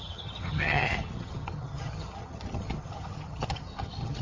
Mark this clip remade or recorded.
remade